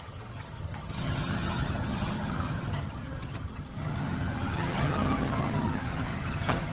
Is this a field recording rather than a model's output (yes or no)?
no